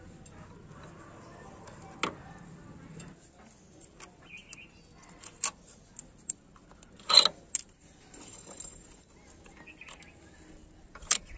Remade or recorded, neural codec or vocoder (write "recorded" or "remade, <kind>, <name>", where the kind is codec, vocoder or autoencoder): recorded